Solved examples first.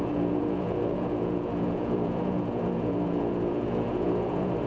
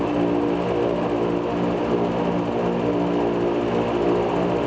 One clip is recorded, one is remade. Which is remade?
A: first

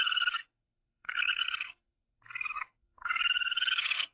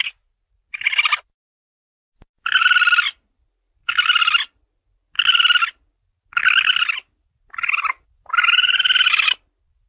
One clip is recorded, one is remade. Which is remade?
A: first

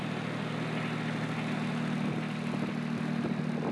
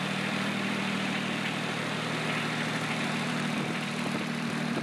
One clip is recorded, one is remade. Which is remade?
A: second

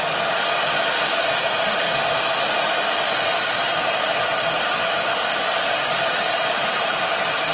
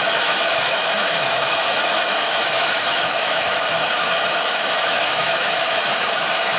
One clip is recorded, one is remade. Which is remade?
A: second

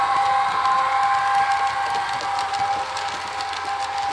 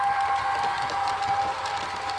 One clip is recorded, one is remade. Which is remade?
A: second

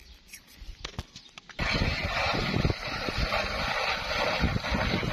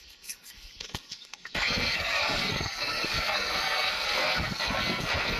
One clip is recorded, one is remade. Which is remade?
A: second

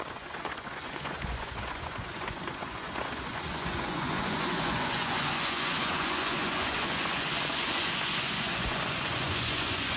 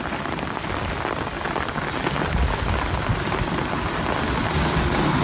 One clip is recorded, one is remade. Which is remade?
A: first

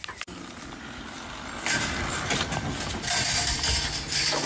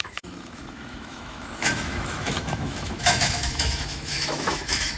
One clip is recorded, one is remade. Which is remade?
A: second